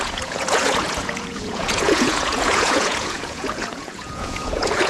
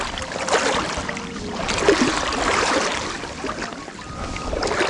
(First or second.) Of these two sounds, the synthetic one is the first